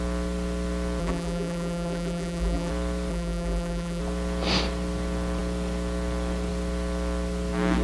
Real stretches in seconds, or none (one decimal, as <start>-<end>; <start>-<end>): 0.0-1.0; 2.7-3.1; 4.0-7.8